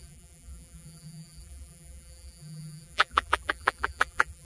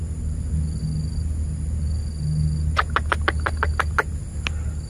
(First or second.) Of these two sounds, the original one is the second